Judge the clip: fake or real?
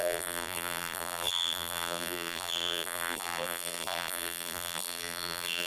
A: fake